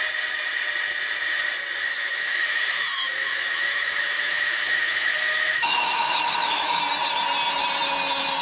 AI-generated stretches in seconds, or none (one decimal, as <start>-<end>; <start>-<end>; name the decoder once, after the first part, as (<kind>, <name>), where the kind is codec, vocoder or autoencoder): 1.9-6.8 (autoencoder, DAC-VAE)